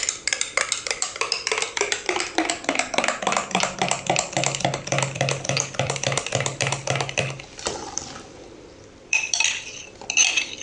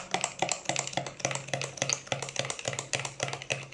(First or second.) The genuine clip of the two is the second